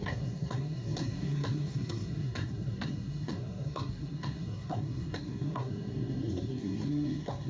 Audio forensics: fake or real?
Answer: fake